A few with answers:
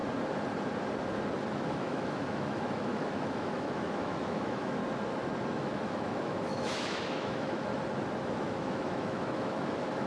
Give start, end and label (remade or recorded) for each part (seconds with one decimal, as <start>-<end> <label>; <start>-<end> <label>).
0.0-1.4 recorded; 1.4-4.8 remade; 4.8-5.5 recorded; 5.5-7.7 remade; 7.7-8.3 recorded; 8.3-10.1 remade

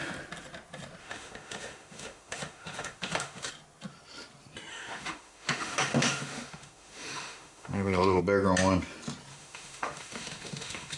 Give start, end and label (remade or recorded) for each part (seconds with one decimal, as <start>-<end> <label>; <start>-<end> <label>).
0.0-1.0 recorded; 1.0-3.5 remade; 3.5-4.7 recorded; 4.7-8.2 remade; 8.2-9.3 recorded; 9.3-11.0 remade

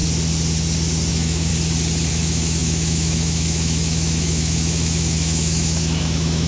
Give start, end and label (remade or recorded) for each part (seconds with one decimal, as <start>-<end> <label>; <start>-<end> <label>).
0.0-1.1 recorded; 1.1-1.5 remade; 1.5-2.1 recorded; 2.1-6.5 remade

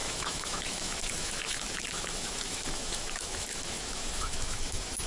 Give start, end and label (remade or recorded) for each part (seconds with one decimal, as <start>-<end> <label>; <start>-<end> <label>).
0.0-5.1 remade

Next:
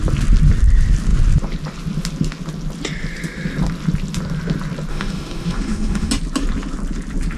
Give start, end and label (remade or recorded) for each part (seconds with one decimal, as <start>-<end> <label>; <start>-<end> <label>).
0.0-4.9 recorded; 4.9-6.1 remade; 6.1-7.4 recorded

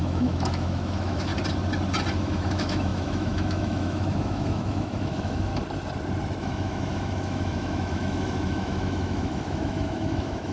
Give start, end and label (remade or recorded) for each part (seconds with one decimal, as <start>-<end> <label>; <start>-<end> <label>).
0.0-1.3 remade; 1.3-2.2 recorded; 2.2-5.5 remade; 5.5-6.4 recorded; 6.4-10.5 remade